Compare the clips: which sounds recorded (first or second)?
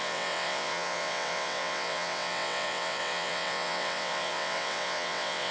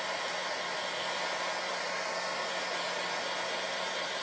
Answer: second